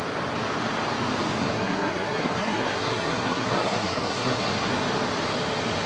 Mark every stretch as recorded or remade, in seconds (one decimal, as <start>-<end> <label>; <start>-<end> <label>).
0.0-1.4 recorded; 1.4-4.7 remade; 4.7-5.9 recorded